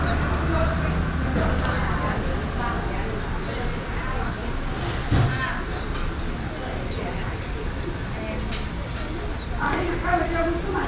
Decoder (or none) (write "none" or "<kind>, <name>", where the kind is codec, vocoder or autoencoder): none